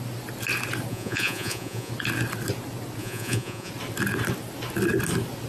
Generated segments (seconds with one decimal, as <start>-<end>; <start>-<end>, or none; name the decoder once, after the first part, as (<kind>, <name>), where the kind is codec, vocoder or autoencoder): 0.9-1.9 (vocoder, Vocos); 3.0-3.7